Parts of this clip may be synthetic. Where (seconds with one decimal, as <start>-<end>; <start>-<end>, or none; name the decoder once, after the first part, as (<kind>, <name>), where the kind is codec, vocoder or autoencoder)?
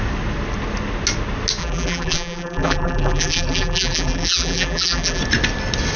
1.6-5.2 (vocoder, BigVGAN v2)